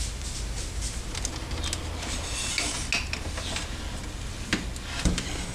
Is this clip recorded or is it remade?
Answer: recorded